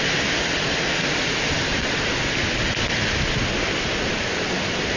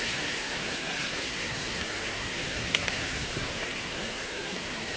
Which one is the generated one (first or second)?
second